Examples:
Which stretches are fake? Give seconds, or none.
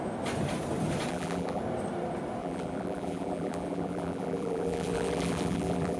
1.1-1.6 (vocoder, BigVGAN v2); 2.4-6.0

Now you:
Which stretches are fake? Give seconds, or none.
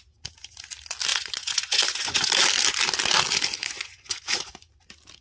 1.1-2.3 (vocoder, Vocos); 3.6-4.7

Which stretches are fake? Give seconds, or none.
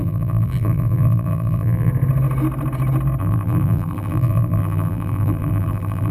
0.0-1.9 (vocoder, BigVGAN v2); 3.2-6.1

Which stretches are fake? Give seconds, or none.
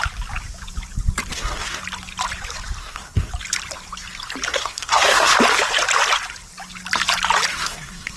1.3-1.8 (codec, SNAC); 2.8-3.3; 4.5-5.3; 7.5-8.2